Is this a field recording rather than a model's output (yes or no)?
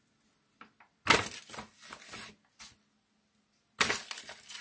yes